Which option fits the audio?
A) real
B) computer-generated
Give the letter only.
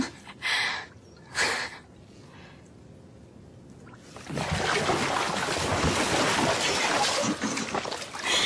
A